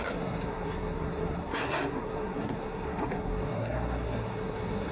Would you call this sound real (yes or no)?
no